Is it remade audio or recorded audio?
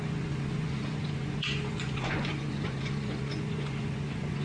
remade